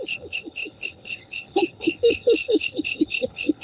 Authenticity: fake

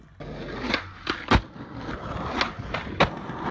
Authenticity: real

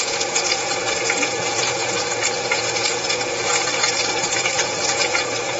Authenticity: fake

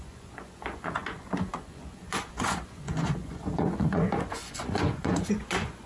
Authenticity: fake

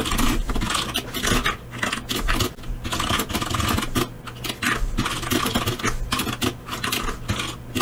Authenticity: real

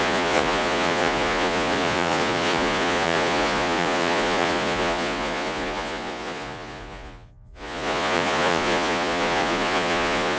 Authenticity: fake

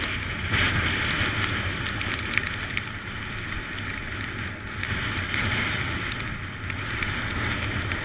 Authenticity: real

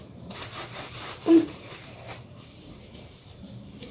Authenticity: fake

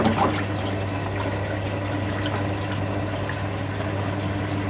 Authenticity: real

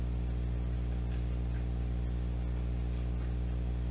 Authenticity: real